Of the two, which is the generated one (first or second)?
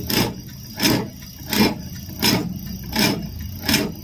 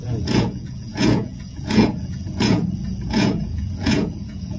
second